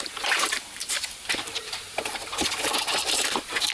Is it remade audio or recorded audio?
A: remade